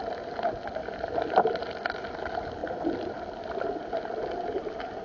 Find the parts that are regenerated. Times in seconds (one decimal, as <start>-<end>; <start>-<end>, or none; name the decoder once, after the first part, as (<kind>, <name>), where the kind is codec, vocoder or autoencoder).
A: none